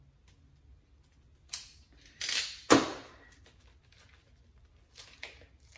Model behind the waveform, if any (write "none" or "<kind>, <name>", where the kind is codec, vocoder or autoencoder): none